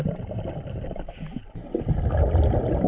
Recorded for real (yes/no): yes